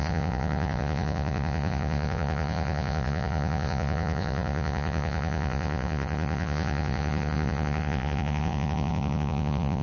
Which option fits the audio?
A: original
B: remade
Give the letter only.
B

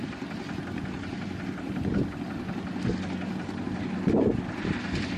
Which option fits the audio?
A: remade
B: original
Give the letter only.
B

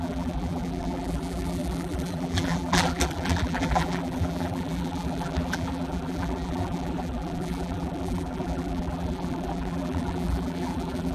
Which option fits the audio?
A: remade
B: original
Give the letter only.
A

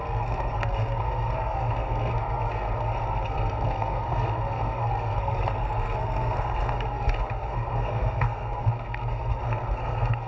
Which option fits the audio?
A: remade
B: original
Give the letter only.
A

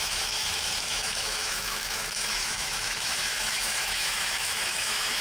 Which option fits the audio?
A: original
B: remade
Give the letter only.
B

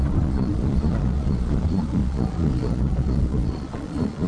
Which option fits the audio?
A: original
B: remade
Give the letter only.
B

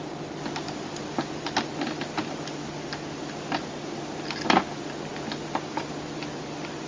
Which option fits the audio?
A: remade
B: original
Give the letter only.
B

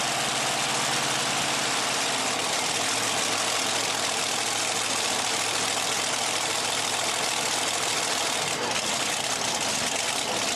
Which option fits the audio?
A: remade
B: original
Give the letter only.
B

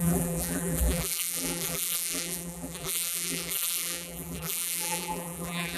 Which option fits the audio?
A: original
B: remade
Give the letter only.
B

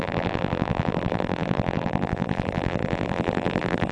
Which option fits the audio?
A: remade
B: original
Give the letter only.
A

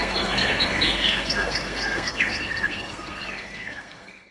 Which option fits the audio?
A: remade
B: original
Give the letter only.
A